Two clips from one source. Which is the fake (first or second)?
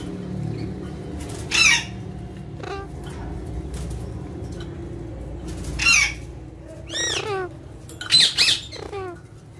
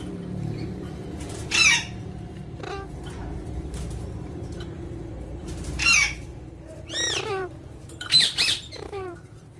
second